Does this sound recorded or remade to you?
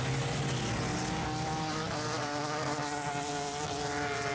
recorded